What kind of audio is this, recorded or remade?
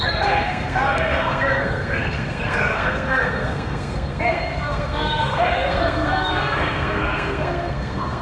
remade